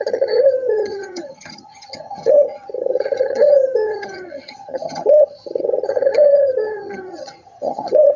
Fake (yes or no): yes